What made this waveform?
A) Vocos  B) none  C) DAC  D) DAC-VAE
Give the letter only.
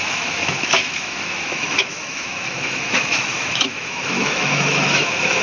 D